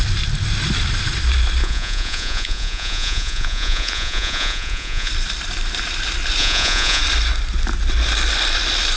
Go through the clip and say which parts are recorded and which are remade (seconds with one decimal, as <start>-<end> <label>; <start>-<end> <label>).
0.0-1.6 recorded; 1.6-5.1 remade; 5.1-6.4 recorded; 6.4-7.0 remade; 7.0-9.0 recorded